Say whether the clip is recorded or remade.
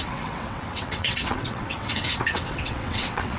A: remade